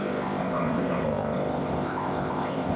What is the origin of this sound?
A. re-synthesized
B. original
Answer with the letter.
A